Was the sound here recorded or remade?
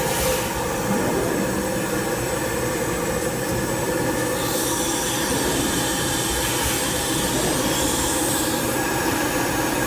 recorded